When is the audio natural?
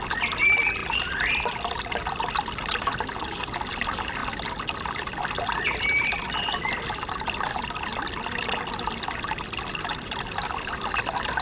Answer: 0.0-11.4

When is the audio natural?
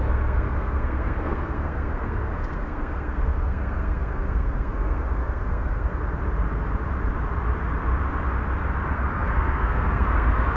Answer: 5.9-8.9